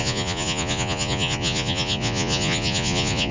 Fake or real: fake